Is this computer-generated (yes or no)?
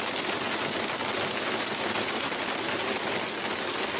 no